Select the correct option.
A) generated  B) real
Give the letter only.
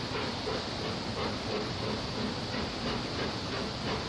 B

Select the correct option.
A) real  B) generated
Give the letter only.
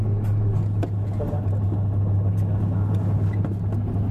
A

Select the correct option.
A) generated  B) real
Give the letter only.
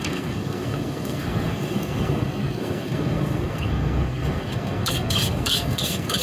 A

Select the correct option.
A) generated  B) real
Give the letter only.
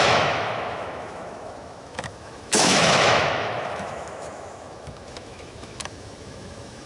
A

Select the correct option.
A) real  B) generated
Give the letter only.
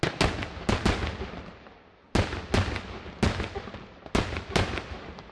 A